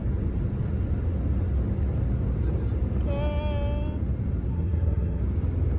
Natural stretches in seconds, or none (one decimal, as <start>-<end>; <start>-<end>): 0.0-4.5; 5.2-5.8